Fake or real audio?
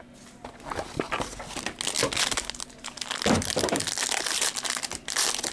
real